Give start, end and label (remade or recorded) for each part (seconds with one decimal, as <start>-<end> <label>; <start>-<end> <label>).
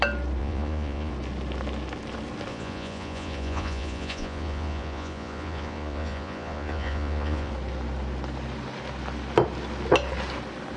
0.0-0.4 recorded; 0.4-1.1 remade; 1.1-2.5 recorded; 2.5-7.5 remade; 7.5-10.8 recorded